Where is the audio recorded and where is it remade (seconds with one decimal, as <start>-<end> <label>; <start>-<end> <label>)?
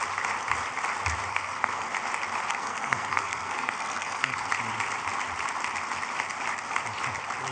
0.0-1.3 recorded; 1.3-1.9 remade; 1.9-2.5 recorded; 2.5-4.5 remade; 4.5-7.5 recorded